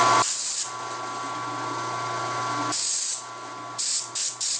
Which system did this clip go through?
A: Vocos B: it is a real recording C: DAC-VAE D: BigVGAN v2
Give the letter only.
B